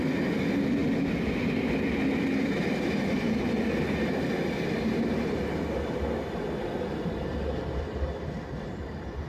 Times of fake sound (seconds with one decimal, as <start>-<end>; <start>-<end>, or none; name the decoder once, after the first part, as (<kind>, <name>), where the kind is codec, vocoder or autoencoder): none